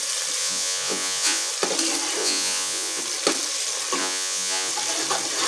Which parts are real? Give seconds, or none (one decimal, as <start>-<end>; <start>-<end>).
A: 0.0-0.4; 1.5-2.2; 3.0-4.0; 4.7-5.5